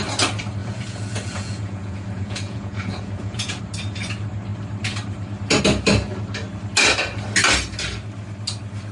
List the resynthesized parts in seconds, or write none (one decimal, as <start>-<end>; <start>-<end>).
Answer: 0.6-3.6